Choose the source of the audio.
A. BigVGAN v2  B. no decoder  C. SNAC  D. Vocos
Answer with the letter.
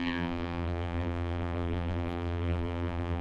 A